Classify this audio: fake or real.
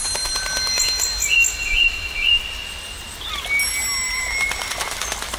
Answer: real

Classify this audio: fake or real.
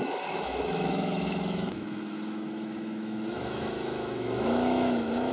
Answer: fake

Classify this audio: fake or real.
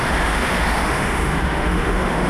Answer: fake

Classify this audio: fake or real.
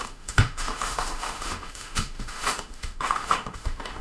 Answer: fake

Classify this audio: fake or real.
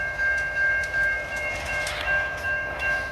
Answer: fake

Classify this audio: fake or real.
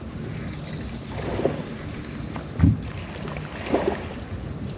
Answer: real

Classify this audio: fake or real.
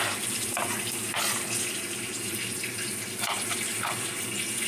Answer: real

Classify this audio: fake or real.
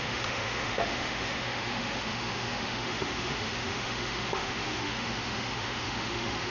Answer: fake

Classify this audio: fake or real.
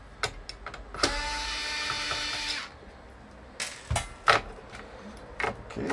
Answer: real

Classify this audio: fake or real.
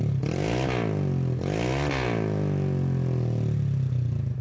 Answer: real